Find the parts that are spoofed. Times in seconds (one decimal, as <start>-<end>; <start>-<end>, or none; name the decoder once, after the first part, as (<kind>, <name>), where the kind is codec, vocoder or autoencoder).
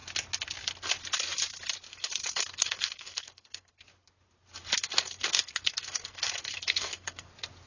1.9-3.7 (codec, SNAC); 4.8-7.3